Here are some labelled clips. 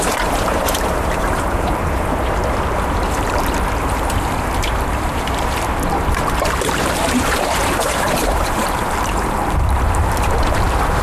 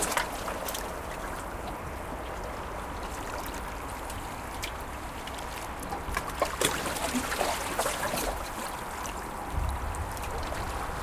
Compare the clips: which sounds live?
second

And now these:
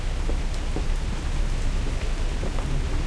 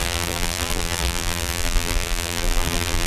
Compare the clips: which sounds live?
first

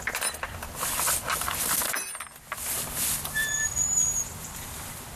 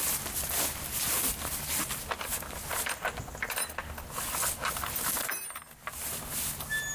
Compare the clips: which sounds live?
second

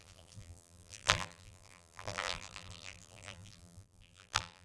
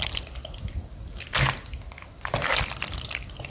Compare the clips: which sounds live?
second